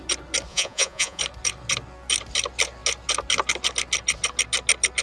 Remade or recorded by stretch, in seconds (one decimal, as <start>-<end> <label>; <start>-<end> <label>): 0.0-0.5 recorded; 0.5-1.2 remade; 1.2-5.0 recorded